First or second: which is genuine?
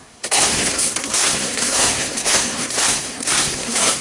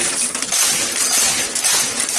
second